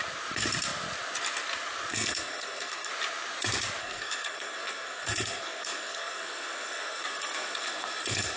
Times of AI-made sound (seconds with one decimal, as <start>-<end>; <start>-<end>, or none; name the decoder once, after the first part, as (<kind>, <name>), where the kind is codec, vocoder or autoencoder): 1.9-2.9 (codec, SNAC); 3.8-8.4